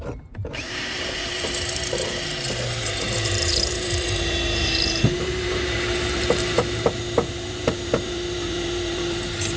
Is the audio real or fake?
fake